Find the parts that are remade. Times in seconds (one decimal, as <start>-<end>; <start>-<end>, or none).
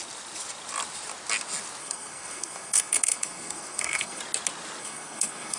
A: 1.8-4.2; 4.8-5.6